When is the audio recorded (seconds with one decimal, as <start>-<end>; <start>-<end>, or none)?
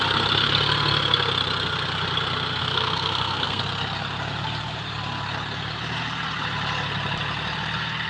0.0-2.6; 3.6-8.1